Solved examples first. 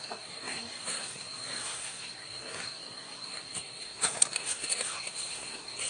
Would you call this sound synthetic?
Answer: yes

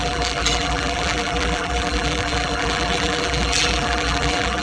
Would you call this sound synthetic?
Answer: yes